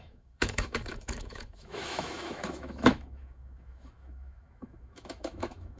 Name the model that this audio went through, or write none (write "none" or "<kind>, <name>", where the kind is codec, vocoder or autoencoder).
autoencoder, DAC-VAE